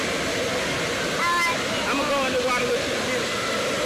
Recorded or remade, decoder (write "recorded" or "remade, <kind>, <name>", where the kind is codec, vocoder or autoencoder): recorded